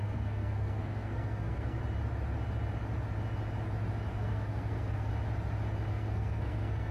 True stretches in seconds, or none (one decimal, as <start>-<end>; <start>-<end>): 1.8-4.1; 5.1-5.9